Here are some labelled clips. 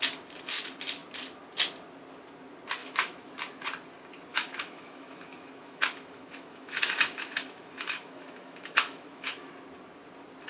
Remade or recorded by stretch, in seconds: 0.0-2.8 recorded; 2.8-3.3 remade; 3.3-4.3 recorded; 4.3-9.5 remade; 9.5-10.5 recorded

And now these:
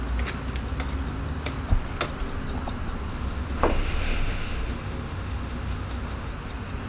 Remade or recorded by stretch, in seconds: 0.0-3.1 recorded; 3.1-6.3 remade; 6.3-6.9 recorded

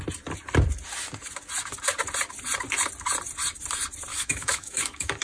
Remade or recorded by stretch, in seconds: 0.0-4.1 recorded; 4.1-5.2 remade

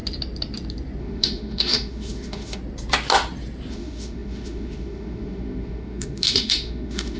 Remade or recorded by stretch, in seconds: 0.0-1.0 recorded; 1.0-2.6 remade; 2.6-3.7 recorded; 3.7-7.2 remade

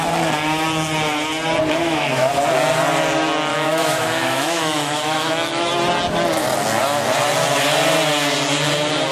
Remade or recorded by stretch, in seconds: 0.0-1.8 recorded; 1.8-2.3 remade; 2.3-3.5 recorded; 3.5-5.7 remade; 5.7-9.1 recorded